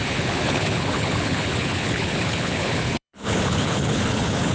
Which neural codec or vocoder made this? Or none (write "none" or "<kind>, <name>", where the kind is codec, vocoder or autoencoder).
codec, HILCodec